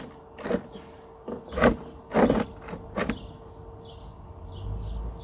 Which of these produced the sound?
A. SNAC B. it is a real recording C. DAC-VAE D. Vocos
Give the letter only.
B